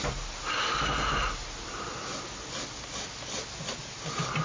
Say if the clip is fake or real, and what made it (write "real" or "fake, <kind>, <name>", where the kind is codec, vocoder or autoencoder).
real